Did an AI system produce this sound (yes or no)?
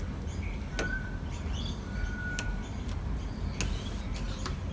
no